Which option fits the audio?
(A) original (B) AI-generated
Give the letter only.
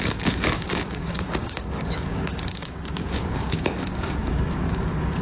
B